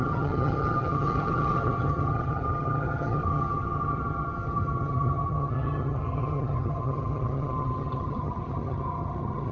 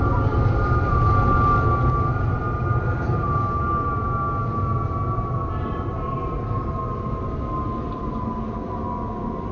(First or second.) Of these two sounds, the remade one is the first